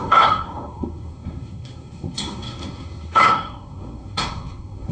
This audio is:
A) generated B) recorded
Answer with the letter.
A